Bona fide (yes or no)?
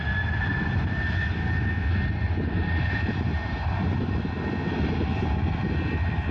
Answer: yes